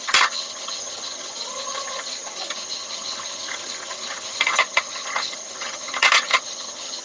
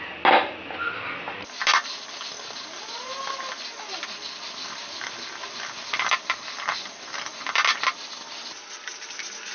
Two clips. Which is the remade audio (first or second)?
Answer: first